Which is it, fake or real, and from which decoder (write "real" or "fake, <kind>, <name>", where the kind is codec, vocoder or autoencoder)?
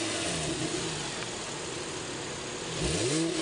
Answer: real